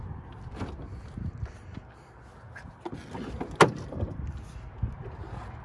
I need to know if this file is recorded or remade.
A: recorded